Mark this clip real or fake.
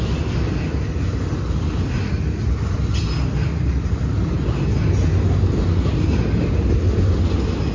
real